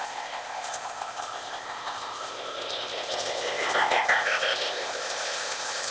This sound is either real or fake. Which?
fake